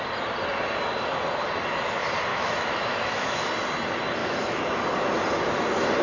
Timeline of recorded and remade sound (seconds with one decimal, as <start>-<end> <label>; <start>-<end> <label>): 0.0-2.3 recorded; 2.3-3.5 remade; 3.5-4.2 recorded; 4.2-4.8 remade; 4.8-6.0 recorded